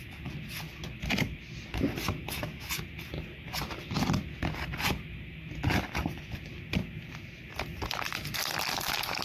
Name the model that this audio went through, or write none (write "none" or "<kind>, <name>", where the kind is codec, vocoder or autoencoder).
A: none